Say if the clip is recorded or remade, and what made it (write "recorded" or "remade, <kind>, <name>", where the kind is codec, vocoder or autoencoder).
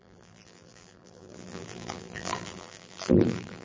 remade, vocoder, BigVGAN v2